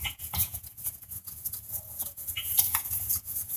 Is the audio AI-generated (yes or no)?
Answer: yes